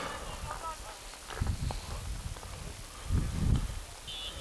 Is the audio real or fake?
real